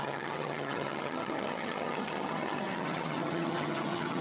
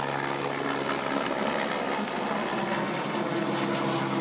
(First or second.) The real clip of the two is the second